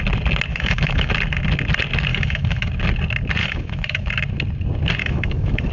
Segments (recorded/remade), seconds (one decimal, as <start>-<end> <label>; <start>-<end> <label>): 0.0-0.5 recorded; 0.5-1.1 remade; 1.1-2.1 recorded; 2.1-2.7 remade; 2.7-3.4 recorded; 3.4-4.1 remade; 4.1-5.0 recorded; 5.0-5.7 remade